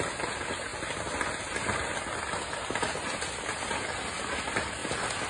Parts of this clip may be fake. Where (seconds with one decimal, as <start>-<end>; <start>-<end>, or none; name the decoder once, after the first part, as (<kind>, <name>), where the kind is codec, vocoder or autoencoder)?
none